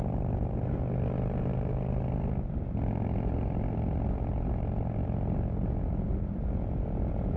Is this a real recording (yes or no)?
yes